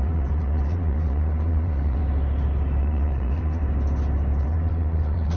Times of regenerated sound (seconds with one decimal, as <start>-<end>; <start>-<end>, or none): 0.0-2.0; 2.8-3.6; 4.4-5.4